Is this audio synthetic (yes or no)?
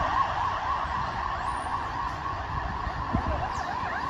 yes